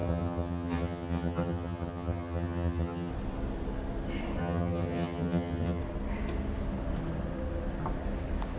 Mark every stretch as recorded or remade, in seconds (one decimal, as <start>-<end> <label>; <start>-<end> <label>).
0.0-3.1 remade; 3.1-4.4 recorded; 4.4-5.8 remade; 5.8-8.6 recorded